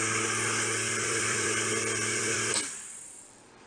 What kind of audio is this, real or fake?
fake